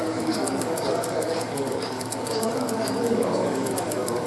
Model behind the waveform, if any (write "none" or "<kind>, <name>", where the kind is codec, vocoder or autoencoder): codec, DAC